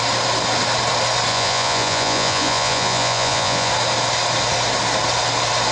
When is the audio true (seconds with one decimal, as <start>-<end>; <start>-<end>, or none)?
0.0-1.3; 3.7-5.7